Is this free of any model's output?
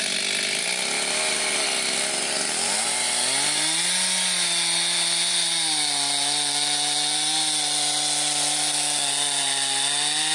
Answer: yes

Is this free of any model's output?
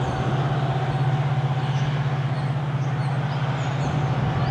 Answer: yes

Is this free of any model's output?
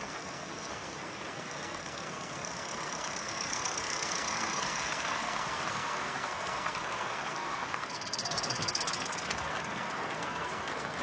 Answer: no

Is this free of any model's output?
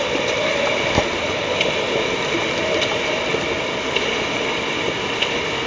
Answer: yes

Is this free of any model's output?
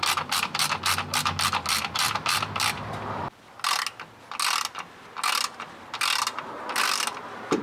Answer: yes